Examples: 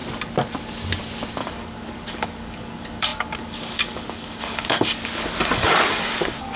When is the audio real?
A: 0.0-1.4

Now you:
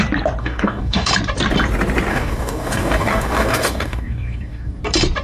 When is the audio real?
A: 0.0-0.4; 1.1-2.1; 4.8-5.2